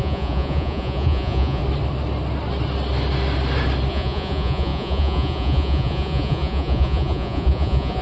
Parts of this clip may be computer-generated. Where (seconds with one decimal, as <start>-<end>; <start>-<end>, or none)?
0.0-1.6; 3.9-8.0